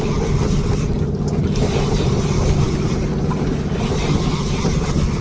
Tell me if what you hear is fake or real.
real